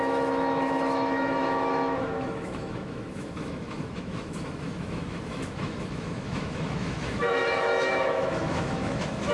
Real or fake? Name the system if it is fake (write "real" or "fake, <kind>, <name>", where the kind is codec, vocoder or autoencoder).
fake, autoencoder, DAC-VAE